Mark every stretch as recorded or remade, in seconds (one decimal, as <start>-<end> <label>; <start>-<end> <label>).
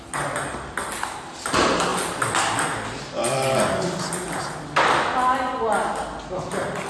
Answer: 0.0-6.9 recorded